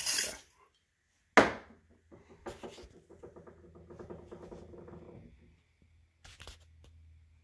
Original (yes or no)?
yes